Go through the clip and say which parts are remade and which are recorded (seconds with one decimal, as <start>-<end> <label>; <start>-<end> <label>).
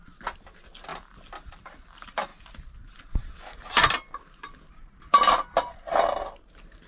0.0-0.9 recorded; 0.9-1.7 remade; 1.7-6.9 recorded